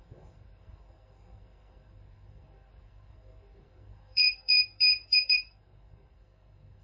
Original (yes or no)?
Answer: no